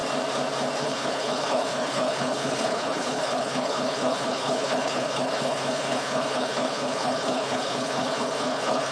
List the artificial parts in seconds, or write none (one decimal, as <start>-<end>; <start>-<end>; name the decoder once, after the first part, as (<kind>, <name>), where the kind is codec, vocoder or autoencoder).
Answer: 0.8-8.9 (codec, HILCodec)